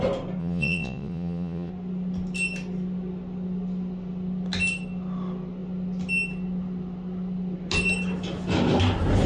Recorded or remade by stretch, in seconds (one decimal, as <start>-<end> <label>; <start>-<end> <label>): 0.0-0.4 recorded; 0.4-1.7 remade; 1.7-9.3 recorded